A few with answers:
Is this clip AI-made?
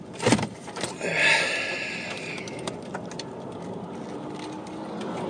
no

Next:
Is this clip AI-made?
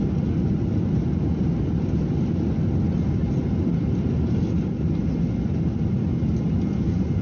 no